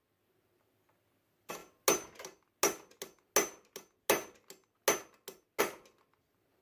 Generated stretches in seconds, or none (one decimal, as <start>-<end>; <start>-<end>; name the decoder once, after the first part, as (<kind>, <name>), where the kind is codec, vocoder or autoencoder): none